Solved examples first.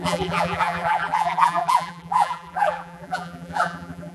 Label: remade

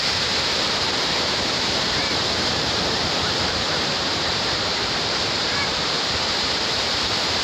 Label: remade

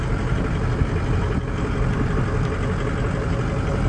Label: recorded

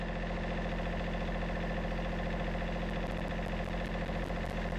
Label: recorded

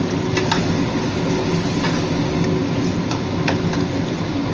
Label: recorded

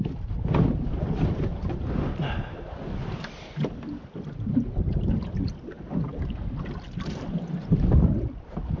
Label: remade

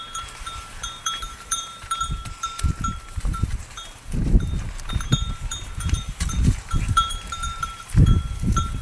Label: remade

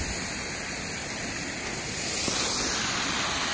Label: recorded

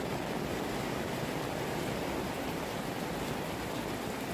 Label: recorded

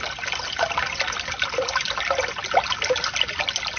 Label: recorded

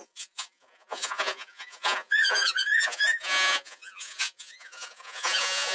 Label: remade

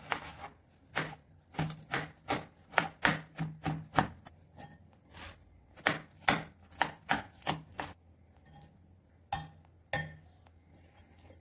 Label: recorded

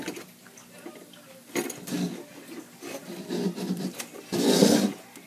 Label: recorded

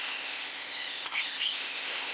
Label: remade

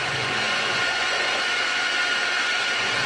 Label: remade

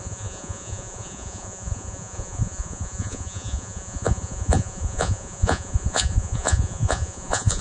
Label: remade